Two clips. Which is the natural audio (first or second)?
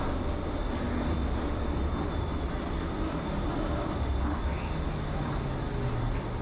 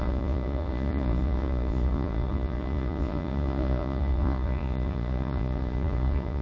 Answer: first